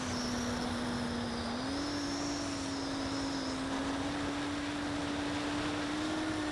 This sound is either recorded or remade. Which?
recorded